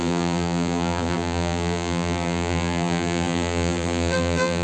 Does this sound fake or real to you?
fake